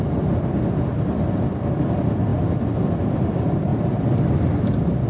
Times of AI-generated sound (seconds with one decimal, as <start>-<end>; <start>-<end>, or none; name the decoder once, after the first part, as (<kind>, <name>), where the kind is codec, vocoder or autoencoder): 0.0-2.3 (vocoder, BigVGAN v2); 3.0-3.7